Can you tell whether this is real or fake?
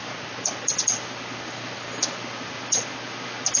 real